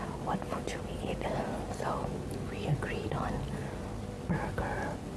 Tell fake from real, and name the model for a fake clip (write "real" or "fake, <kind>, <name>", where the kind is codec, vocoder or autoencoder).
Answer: real